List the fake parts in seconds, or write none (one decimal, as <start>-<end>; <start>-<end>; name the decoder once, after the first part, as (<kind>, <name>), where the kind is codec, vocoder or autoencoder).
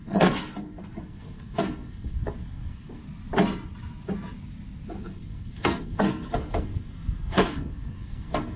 0.0-3.0 (codec, SNAC); 5.0-8.6